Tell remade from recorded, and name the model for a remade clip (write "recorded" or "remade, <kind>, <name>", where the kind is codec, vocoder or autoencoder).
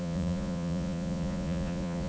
remade, vocoder, Vocos